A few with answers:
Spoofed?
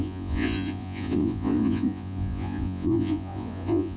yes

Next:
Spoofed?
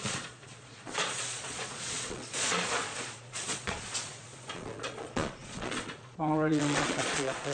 yes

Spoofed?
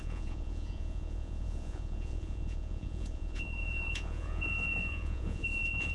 yes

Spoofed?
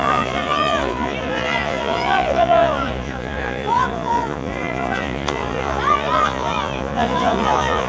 yes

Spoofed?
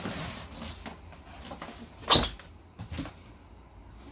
no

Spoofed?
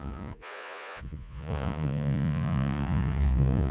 yes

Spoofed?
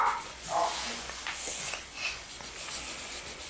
yes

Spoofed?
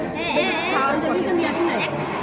no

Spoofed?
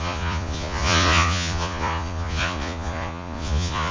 yes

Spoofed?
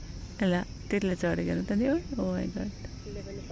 no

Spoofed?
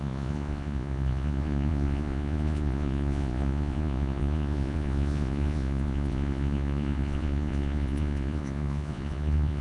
yes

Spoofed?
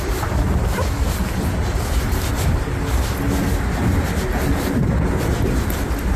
no